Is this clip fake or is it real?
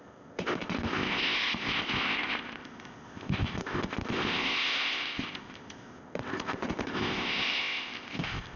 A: fake